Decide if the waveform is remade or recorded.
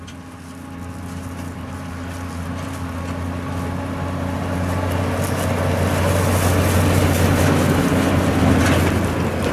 recorded